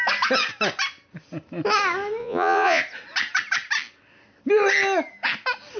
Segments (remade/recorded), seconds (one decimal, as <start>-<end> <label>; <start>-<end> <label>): 0.0-2.2 recorded; 2.2-2.8 remade; 2.8-5.8 recorded